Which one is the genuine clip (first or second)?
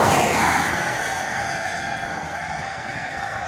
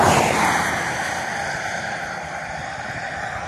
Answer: second